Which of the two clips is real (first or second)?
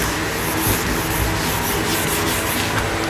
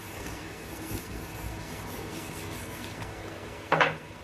first